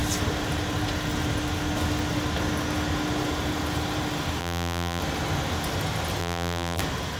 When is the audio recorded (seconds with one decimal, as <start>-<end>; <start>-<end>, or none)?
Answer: 0.0-4.4; 5.0-6.2; 6.8-7.2